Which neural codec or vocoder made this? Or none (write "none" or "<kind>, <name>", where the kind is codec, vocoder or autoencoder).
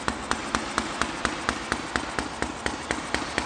none